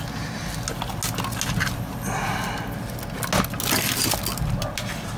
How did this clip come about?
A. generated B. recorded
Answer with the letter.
B